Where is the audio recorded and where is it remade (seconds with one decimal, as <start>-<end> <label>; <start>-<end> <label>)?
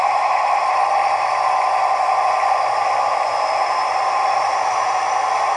0.0-0.8 recorded; 0.8-2.2 remade; 2.2-5.6 recorded